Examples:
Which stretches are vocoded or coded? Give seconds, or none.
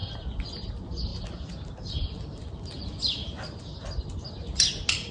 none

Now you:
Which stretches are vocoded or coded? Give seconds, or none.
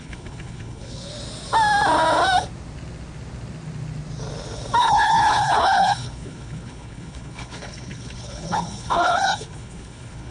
0.0-1.1 (codec, HILCodec); 4.8-10.3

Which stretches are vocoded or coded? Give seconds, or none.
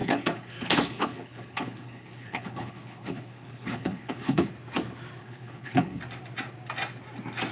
0.0-4.5 (codec, HILCodec); 5.2-6.0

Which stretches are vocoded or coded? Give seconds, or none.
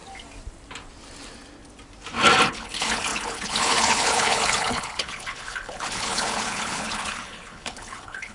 2.5-8.3 (codec, HILCodec)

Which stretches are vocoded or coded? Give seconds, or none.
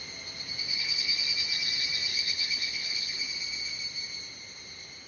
0.7-1.2 (codec, HILCodec); 2.1-3.3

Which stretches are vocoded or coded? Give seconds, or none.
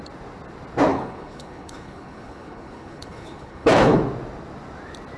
0.9-4.0 (codec, HILCodec)